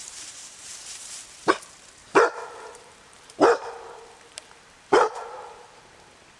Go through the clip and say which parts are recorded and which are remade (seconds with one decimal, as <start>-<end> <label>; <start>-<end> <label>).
0.0-1.2 remade; 1.2-2.0 recorded; 2.0-5.8 remade; 5.8-6.4 recorded